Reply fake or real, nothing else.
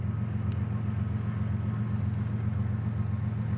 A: real